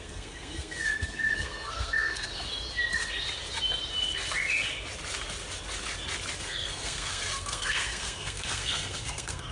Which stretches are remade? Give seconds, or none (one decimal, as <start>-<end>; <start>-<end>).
0.0-2.3; 6.4-9.5